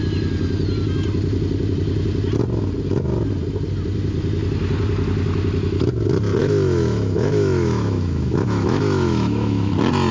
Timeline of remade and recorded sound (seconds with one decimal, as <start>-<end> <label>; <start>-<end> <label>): 0.0-6.4 recorded; 6.4-9.7 remade; 9.7-10.1 recorded